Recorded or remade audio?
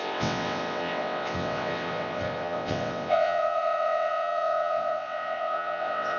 remade